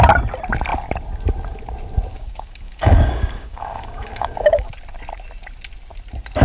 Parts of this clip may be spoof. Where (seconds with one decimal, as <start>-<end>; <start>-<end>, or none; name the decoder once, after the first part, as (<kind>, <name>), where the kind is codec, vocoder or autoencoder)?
2.1-4.7 (codec, DAC)